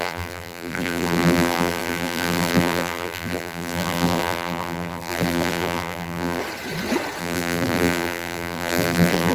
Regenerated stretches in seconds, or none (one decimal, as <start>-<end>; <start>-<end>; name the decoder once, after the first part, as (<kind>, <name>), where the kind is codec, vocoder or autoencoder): 0.0-6.4 (vocoder, BigVGAN v2); 7.2-9.3

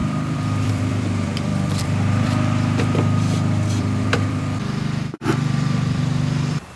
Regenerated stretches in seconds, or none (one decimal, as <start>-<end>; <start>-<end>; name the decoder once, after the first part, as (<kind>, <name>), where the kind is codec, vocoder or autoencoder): 0.0-6.8 (vocoder, BigVGAN v2)

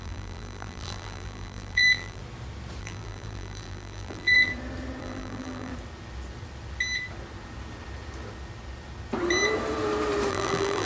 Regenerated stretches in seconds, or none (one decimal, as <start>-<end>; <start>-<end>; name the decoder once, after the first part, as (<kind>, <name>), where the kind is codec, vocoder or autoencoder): 0.0-2.2 (vocoder, BigVGAN v2); 2.8-4.5; 5.0-5.7; 10.3-10.9

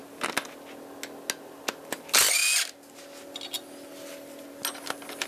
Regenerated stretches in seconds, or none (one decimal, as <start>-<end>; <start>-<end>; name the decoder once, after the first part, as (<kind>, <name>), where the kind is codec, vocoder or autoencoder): none

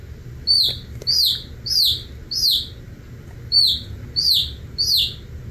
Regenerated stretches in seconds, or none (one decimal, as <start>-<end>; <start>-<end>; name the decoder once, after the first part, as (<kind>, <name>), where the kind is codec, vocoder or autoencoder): none